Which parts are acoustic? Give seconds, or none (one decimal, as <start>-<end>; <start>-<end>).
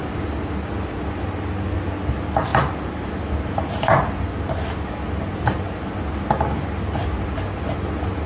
0.0-8.3